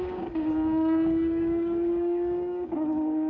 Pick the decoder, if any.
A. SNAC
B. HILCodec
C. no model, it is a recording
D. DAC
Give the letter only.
D